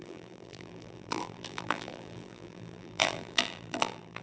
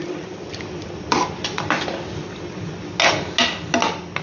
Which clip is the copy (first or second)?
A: first